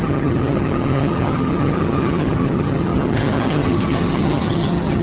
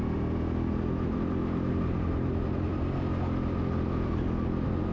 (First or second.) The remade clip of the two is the first